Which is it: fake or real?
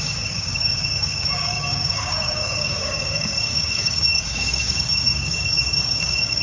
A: fake